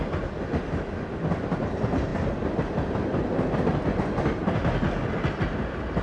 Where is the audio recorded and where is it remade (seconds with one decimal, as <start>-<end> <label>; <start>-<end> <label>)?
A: 0.0-6.0 recorded